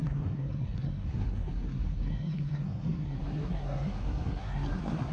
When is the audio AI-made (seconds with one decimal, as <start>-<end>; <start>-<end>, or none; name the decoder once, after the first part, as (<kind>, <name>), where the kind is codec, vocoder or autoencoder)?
0.0-5.1 (codec, SNAC)